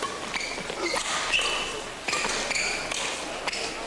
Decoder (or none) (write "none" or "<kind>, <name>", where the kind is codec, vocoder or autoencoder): none